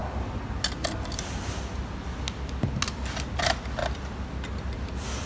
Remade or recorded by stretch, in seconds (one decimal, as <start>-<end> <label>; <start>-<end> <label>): 0.0-0.8 recorded; 0.8-1.7 remade; 1.7-3.4 recorded; 3.4-3.8 remade; 3.8-4.8 recorded; 4.8-5.3 remade